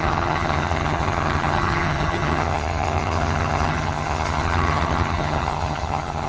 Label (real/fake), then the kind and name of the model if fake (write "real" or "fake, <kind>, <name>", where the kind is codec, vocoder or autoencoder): fake, vocoder, HiFi-GAN